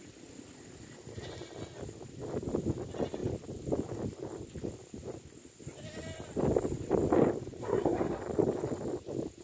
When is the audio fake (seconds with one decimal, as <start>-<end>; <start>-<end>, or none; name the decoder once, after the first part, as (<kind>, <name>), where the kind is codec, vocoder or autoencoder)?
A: 7.6-8.2 (codec, SNAC)